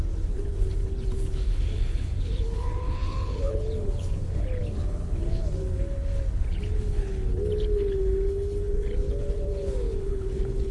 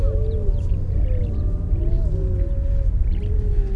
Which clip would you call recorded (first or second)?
second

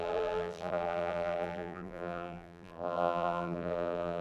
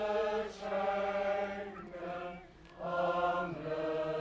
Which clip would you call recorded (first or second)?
second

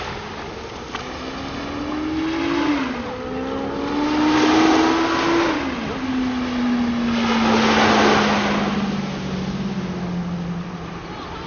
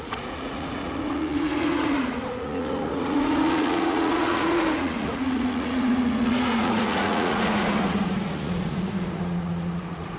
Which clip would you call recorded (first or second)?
first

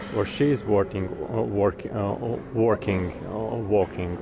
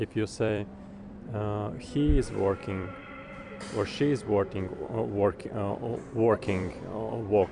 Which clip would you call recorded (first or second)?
first